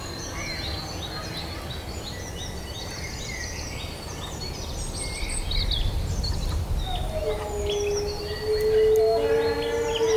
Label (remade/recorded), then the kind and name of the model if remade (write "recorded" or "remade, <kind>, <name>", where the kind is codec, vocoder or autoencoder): recorded